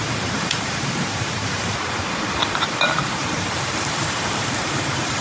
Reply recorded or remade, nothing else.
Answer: remade